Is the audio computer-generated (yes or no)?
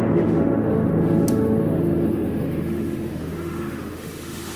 yes